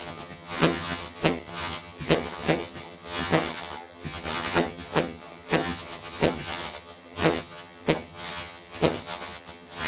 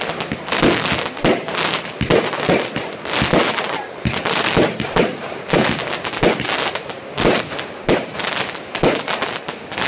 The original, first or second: second